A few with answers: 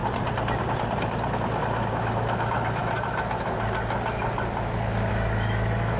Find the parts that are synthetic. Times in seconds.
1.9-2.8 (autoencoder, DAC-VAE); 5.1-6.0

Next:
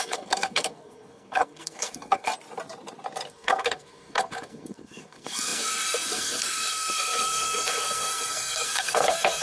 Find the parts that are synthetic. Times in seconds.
0.0-2.3 (codec, SNAC); 3.3-9.4

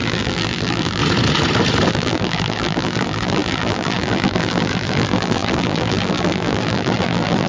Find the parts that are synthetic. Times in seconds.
0.0-1.0 (vocoder, BigVGAN v2); 1.9-7.5

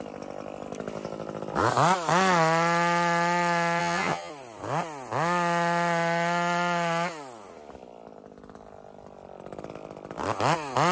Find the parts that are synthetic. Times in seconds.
3.8-4.3 (vocoder, HiFi-GAN)

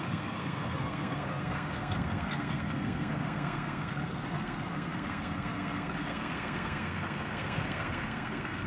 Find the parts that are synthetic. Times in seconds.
0.0-8.7 (codec, SNAC)